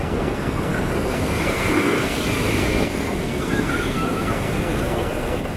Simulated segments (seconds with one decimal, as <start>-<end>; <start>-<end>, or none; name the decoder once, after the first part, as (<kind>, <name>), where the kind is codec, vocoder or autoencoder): 0.0-5.6 (codec, SNAC)